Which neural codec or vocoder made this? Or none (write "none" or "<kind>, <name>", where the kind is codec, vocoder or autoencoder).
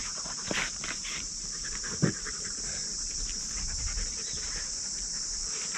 vocoder, BigVGAN v2